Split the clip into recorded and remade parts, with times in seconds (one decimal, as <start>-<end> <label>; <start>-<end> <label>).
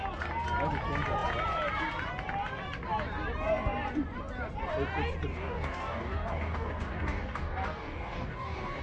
0.0-5.3 recorded; 5.3-8.8 remade